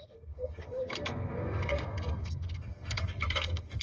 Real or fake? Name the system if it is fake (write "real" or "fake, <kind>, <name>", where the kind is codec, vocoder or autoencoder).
fake, codec, SNAC